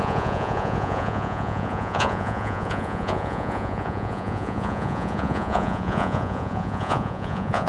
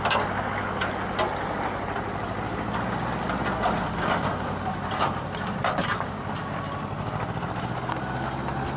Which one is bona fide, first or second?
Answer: second